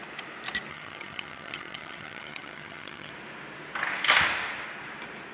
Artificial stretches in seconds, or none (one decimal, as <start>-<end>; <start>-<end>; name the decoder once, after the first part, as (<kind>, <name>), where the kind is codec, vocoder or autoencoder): 0.7-3.1 (vocoder, HiFi-GAN)